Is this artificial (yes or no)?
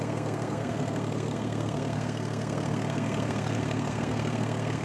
yes